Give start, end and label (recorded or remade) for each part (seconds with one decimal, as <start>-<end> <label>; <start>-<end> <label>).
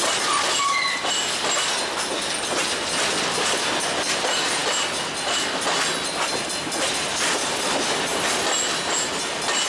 0.0-9.7 recorded